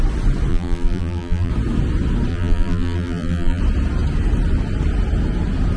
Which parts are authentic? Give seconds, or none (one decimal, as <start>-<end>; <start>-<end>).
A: 0.0-0.5; 1.5-2.3; 3.6-5.8

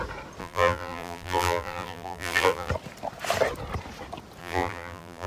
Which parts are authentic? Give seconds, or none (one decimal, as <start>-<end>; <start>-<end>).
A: 0.0-0.4; 2.7-4.4

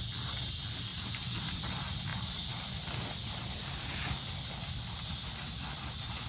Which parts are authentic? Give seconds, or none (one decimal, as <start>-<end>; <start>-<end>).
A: 0.0-0.9; 1.6-6.3

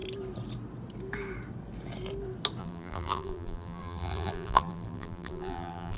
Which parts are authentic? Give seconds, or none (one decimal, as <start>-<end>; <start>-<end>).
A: 0.0-2.6

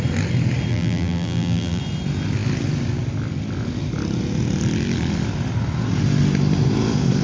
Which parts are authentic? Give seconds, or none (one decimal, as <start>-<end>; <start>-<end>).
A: 0.0-0.7; 1.8-7.2

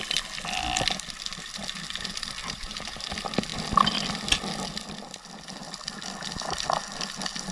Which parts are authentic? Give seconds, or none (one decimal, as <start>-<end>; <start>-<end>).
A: 0.0-2.4; 3.1-7.5